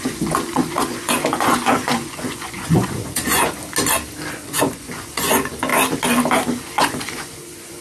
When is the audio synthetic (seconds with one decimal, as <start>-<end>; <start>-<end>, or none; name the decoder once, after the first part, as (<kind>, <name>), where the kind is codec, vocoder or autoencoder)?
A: 0.0-3.6 (vocoder, Vocos); 4.3-5.7; 6.6-7.8